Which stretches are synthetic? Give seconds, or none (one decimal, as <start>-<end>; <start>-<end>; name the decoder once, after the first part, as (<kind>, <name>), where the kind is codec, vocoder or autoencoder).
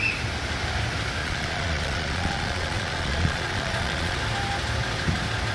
1.2-4.2 (vocoder, Vocos)